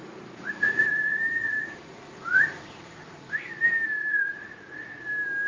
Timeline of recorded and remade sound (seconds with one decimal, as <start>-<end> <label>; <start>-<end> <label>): 0.0-3.3 remade; 3.3-4.0 recorded; 4.0-5.0 remade; 5.0-5.5 recorded